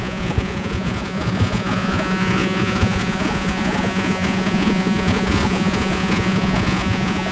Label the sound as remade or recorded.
remade